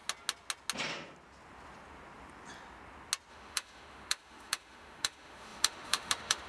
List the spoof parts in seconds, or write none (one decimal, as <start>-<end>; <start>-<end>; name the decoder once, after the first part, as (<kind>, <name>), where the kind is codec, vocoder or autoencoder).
3.3-6.5 (autoencoder, DAC-VAE)

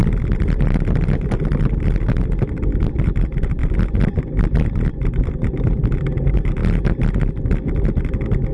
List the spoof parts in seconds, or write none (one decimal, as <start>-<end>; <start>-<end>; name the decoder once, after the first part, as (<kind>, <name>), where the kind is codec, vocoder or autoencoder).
0.0-3.6 (vocoder, BigVGAN v2); 4.2-6.6

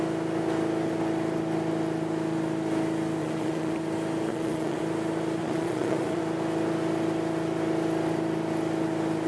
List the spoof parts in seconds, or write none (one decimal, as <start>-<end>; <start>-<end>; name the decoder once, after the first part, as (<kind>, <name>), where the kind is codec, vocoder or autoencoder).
3.2-3.7 (vocoder, Vocos); 4.3-4.8; 5.4-6.2